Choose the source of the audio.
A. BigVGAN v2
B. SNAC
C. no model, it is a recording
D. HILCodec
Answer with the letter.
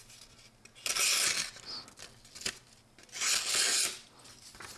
C